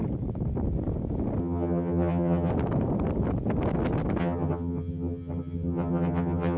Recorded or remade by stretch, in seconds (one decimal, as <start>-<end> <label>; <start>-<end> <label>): 0.0-1.4 recorded; 1.4-2.5 remade; 2.5-4.2 recorded; 4.2-6.6 remade